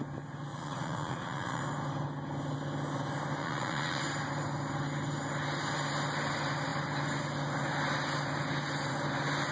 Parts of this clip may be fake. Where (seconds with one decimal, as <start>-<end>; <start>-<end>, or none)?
0.5-1.6; 3.4-4.0